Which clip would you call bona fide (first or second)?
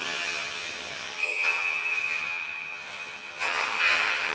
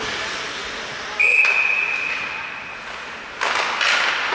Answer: second